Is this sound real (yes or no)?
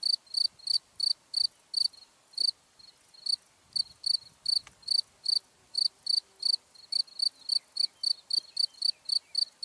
yes